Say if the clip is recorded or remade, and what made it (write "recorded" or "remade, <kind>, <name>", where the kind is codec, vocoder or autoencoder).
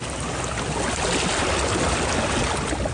recorded